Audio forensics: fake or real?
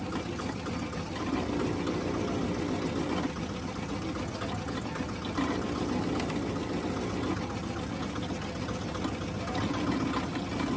real